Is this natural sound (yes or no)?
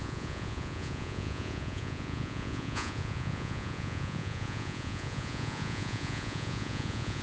no